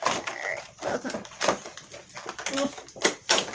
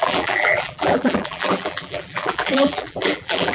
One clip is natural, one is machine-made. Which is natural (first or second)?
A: first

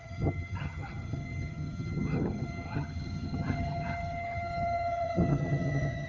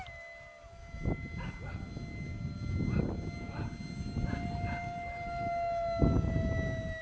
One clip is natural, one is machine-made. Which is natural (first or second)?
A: second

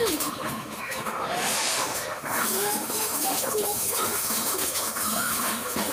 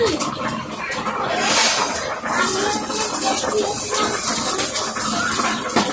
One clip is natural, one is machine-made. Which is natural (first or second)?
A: second